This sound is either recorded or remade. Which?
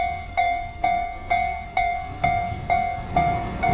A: remade